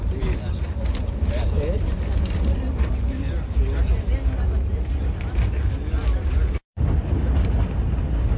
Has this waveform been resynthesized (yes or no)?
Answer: no